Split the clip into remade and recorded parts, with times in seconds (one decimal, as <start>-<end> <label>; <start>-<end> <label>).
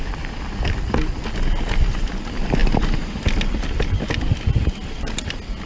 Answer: 0.0-5.7 recorded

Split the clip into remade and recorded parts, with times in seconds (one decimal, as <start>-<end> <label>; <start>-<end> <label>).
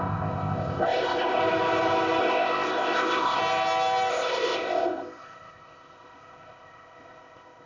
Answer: 0.0-1.4 remade; 1.4-2.2 recorded; 2.2-3.4 remade; 3.4-4.1 recorded; 4.1-7.7 remade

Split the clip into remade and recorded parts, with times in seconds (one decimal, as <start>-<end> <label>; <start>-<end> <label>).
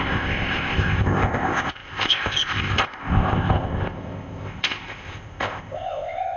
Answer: 0.0-6.4 remade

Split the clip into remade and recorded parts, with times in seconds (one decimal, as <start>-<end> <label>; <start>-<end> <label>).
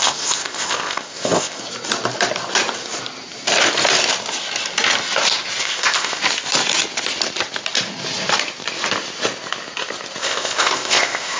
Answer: 0.0-1.6 remade; 1.6-5.6 recorded; 5.6-6.2 remade; 6.2-10.2 recorded; 10.2-11.4 remade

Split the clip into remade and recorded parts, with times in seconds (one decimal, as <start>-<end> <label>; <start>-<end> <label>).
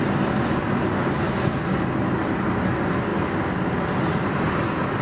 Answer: 0.0-5.0 recorded